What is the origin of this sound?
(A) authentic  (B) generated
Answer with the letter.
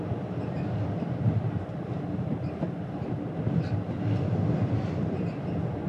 A